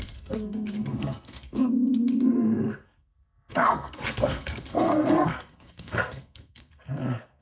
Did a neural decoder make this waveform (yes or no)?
yes